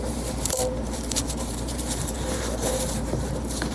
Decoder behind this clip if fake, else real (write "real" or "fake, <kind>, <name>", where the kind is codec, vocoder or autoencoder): fake, vocoder, BigVGAN v2